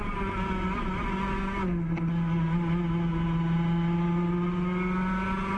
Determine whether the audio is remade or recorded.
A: recorded